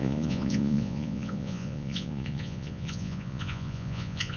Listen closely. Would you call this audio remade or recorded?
remade